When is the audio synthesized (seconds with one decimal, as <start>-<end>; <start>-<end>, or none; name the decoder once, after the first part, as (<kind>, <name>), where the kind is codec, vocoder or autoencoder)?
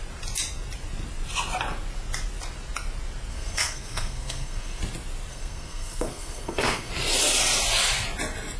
3.3-4.8 (codec, SNAC); 5.3-6.9